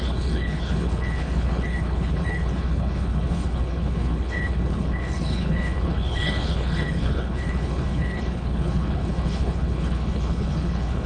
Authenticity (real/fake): fake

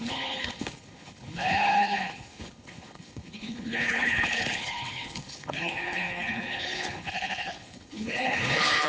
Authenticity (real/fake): fake